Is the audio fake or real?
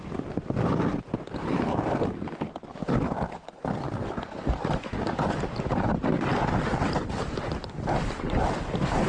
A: real